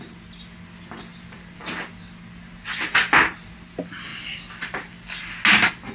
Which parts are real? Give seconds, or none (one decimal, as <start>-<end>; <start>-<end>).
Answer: 0.0-1.1; 1.8-4.1; 5.2-5.9